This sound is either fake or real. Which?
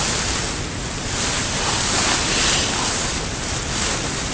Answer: real